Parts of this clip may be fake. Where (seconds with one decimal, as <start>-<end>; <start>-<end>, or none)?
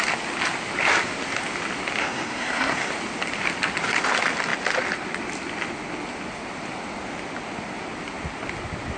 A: 2.0-2.9